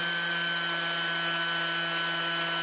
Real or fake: real